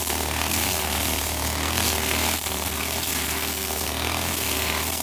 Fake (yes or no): yes